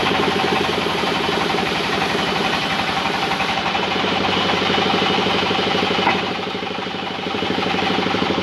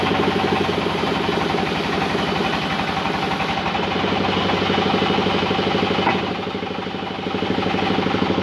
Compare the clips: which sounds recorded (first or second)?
second